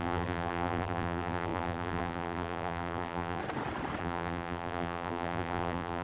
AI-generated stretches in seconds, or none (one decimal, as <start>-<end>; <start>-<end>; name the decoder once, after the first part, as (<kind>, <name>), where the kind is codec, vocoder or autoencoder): 0.0-3.4 (vocoder, BigVGAN v2); 4.0-6.0